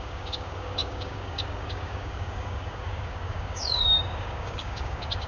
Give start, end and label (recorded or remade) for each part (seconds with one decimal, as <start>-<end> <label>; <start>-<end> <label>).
0.0-5.3 remade